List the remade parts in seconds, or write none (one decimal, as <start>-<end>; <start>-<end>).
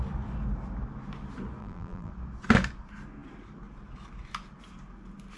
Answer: 1.6-2.1